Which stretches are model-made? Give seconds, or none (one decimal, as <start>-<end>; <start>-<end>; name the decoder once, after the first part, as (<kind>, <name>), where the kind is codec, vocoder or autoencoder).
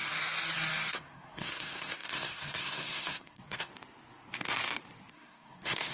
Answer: 0.9-3.7 (codec, SNAC); 5.1-5.9